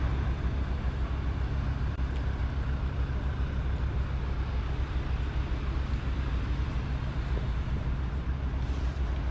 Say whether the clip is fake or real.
real